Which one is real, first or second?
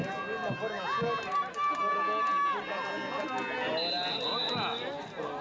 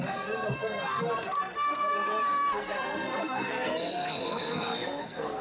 first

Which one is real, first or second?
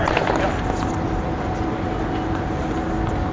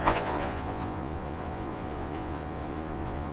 first